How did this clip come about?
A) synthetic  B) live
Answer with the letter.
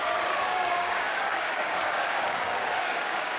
A